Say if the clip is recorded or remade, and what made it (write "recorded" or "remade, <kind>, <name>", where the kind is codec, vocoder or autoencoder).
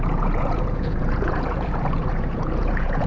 remade, vocoder, Vocos